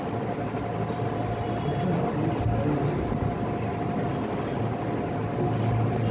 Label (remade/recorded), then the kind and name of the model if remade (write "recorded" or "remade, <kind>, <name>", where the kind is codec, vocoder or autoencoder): recorded